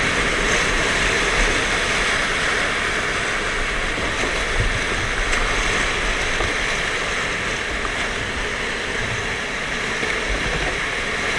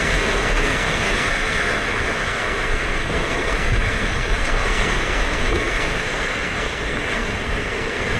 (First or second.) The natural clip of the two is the first